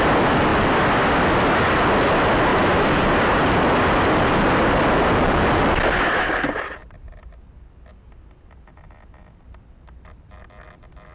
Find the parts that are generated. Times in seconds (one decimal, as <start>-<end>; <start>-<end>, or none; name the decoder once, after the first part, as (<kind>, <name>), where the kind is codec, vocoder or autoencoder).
2.5-3.6 (vocoder, BigVGAN v2)